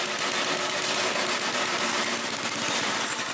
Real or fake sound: real